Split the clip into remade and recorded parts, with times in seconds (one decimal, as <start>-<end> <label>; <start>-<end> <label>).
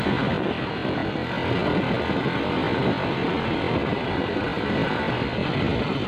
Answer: 0.0-6.1 recorded